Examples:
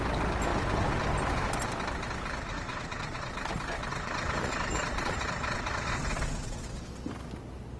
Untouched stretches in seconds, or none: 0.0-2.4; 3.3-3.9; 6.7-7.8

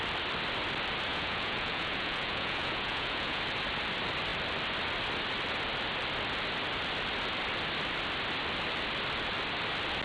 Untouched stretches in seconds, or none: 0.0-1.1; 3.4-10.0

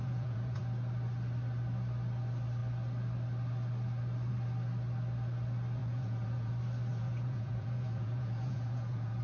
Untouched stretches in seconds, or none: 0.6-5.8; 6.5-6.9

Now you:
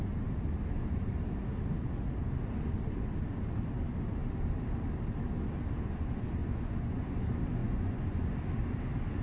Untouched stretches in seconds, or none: 0.0-6.4; 7.0-7.6; 8.3-9.2

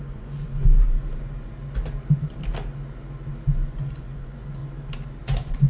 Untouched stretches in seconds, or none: 0.5-3.9; 4.6-5.2

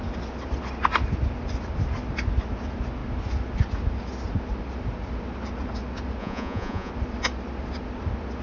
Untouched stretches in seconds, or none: 0.0-6.2; 6.9-8.4

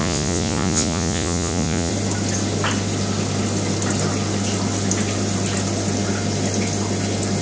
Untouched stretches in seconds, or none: 1.9-7.4

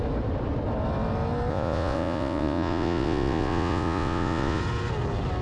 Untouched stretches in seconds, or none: 0.0-1.5; 4.6-5.4